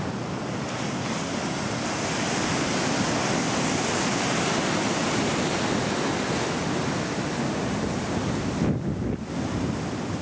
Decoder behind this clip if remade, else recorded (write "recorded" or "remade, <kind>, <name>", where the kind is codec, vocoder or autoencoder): recorded